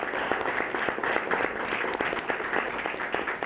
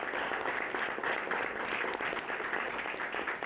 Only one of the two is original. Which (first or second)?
first